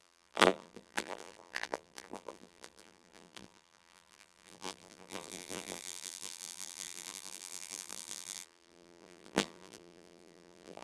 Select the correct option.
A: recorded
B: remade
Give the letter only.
B